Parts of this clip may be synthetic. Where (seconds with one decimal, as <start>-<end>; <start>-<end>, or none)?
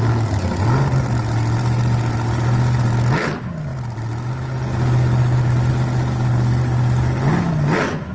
none